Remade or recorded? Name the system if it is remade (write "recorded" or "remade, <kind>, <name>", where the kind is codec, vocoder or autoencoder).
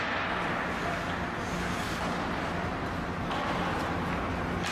recorded